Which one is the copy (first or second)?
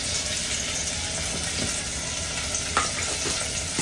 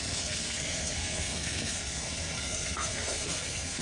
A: second